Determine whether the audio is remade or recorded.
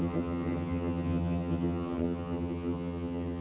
remade